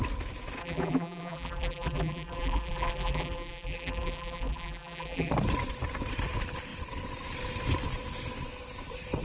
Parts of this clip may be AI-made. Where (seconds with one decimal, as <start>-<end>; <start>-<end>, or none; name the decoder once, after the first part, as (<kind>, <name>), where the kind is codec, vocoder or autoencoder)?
0.6-5.3 (vocoder, BigVGAN v2)

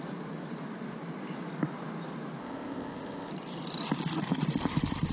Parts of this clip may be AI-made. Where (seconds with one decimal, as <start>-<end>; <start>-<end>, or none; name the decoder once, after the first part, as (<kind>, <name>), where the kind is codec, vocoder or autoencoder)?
2.4-3.3 (codec, ZipCodec)

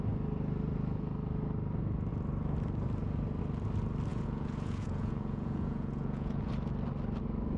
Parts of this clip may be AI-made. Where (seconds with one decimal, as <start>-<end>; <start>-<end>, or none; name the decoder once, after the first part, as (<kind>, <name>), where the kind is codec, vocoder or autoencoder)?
4.1-6.5 (vocoder, Vocos)

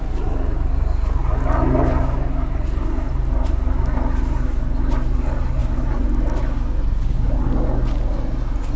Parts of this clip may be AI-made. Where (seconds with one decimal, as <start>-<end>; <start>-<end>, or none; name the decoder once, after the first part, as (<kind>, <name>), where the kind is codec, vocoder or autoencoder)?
none